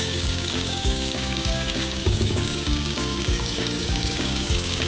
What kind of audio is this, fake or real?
fake